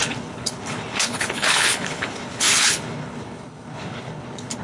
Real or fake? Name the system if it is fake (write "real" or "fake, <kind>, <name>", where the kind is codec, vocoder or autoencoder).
fake, codec, HILCodec